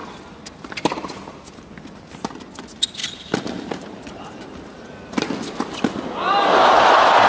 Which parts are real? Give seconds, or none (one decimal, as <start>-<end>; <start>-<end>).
0.0-7.3